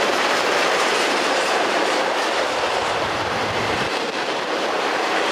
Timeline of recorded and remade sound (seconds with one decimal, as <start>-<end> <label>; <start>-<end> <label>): 0.0-2.2 remade; 2.2-2.8 recorded; 2.8-5.3 remade